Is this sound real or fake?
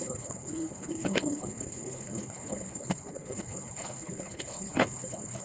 fake